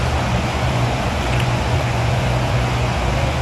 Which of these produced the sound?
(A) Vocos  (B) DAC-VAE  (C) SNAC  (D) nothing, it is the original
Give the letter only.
A